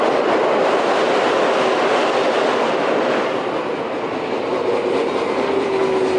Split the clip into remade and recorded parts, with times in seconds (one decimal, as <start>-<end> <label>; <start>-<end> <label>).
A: 0.0-5.0 recorded; 5.0-5.8 remade; 5.8-6.2 recorded

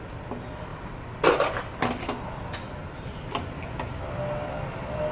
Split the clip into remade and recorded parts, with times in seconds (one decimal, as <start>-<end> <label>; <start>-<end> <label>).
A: 0.0-2.8 recorded; 2.8-3.6 remade; 3.6-5.1 recorded

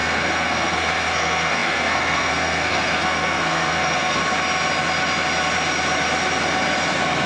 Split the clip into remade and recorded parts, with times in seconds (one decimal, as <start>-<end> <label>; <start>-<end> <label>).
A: 0.0-4.2 remade; 4.2-7.3 recorded

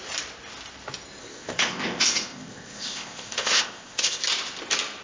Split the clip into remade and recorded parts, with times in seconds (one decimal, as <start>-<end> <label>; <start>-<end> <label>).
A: 0.0-1.2 recorded; 1.2-4.2 remade; 4.2-5.0 recorded

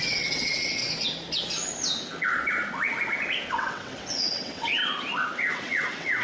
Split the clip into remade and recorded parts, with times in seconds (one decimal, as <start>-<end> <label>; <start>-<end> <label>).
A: 0.0-0.8 remade; 0.8-3.5 recorded; 3.5-4.8 remade; 4.8-5.5 recorded; 5.5-6.2 remade

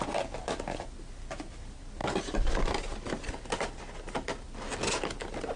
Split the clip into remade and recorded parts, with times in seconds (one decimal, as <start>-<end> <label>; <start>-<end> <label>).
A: 0.0-5.6 recorded